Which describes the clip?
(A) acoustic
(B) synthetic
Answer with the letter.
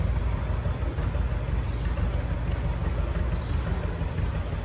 A